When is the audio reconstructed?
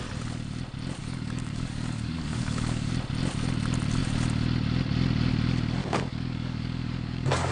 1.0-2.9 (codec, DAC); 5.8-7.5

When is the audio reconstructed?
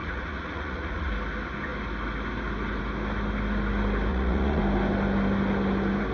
0.0-1.1 (vocoder, Vocos); 4.1-4.6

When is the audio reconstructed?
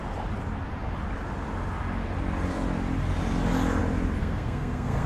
4.2-5.1 (codec, SNAC)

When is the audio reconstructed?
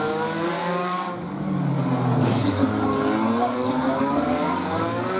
0.0-2.6 (codec, DAC); 4.0-5.2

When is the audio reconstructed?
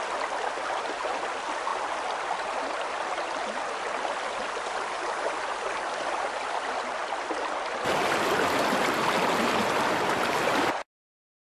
none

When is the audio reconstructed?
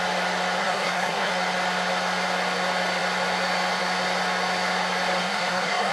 0.6-1.3 (codec, SNAC); 5.2-5.9